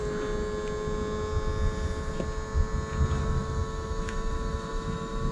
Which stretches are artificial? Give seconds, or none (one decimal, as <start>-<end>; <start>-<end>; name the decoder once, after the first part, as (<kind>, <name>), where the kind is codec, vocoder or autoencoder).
3.2-5.3 (autoencoder, DAC-VAE)